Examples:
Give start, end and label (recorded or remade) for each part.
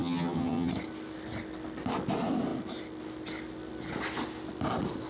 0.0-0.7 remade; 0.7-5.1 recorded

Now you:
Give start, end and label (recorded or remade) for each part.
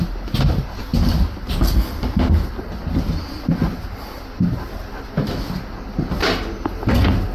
0.0-7.3 recorded